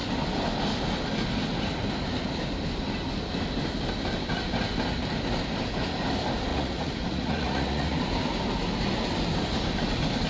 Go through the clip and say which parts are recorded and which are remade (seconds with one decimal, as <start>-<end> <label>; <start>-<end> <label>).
0.0-6.5 recorded; 6.5-8.0 remade; 8.0-10.3 recorded